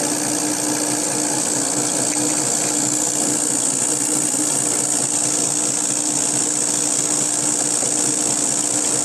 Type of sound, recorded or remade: recorded